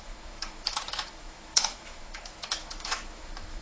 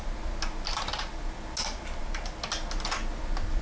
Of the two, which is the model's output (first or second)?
first